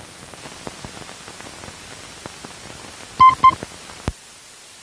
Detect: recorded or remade recorded